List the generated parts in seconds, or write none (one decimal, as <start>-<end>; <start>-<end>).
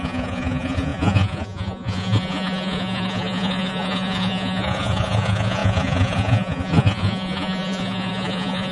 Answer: 0.0-8.7